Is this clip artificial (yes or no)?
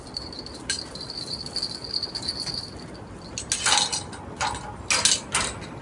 no